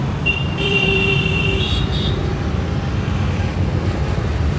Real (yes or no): no